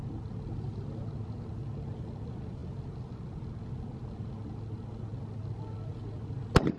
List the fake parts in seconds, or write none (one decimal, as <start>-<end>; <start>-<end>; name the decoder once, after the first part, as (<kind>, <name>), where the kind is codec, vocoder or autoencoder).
none